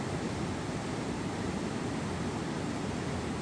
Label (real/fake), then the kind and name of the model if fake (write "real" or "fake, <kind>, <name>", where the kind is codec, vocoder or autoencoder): real